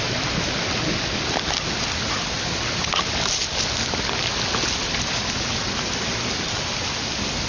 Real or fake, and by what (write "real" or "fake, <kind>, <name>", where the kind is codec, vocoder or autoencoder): real